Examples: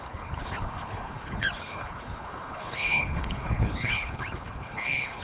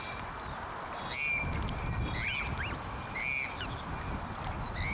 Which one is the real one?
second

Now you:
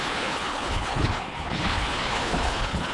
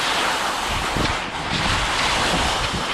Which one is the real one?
second